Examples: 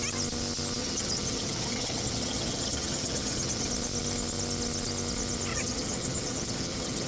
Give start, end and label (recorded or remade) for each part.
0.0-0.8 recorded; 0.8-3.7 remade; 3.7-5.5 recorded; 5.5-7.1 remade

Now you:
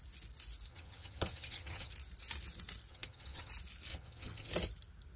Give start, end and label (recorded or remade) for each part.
0.0-0.7 recorded; 0.7-1.9 remade; 1.9-2.9 recorded; 2.9-3.5 remade; 3.5-3.9 recorded; 3.9-4.5 remade; 4.5-5.2 recorded

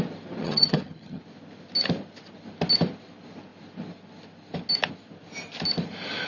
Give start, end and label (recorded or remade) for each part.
0.0-0.4 recorded; 0.4-1.2 remade; 1.2-6.3 recorded

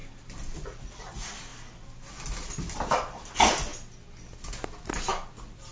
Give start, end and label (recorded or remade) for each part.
0.0-5.7 recorded

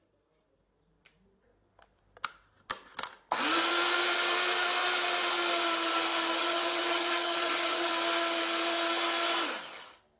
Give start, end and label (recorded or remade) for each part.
0.0-6.4 recorded; 6.4-7.9 remade; 7.9-10.2 recorded

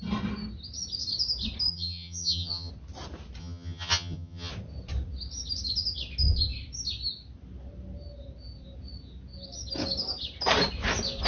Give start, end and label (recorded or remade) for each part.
0.0-1.7 recorded; 1.7-2.7 remade; 2.7-3.4 recorded; 3.4-4.5 remade; 4.5-11.3 recorded

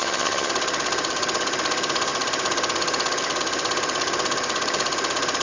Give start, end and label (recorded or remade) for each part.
0.0-0.5 remade; 0.5-5.4 recorded